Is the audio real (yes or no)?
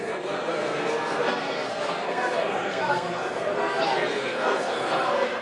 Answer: no